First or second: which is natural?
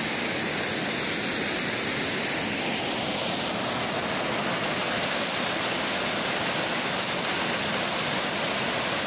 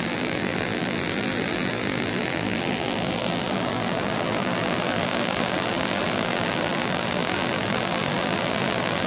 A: first